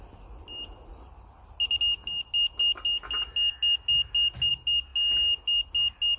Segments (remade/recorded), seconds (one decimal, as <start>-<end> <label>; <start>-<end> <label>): 0.0-6.2 recorded